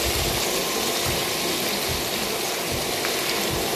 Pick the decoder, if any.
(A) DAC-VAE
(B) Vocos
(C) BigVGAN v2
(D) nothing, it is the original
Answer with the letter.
D